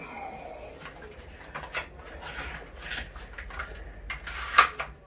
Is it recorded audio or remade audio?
recorded